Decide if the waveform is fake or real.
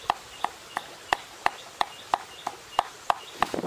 real